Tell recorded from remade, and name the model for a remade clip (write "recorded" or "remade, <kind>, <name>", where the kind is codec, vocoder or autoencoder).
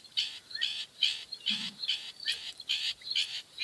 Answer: remade, vocoder, BigVGAN v2